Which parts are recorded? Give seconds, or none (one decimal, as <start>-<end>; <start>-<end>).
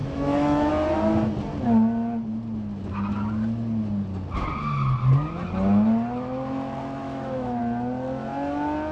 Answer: 0.7-7.0; 7.6-8.9